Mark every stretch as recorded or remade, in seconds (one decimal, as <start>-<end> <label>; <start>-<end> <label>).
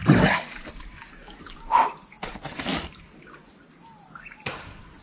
0.0-5.0 recorded